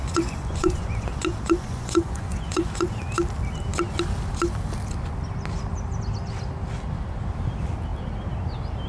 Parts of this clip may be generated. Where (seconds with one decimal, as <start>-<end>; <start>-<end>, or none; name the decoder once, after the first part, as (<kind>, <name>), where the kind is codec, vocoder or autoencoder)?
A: 0.0-3.0 (vocoder, Vocos)